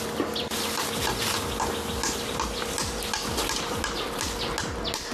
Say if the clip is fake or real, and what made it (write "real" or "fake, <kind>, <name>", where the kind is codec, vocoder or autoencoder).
real